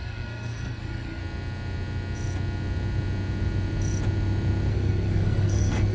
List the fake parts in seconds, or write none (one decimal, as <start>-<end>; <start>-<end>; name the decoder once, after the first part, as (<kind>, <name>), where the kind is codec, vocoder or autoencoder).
0.0-1.2 (codec, SNAC); 4.7-5.9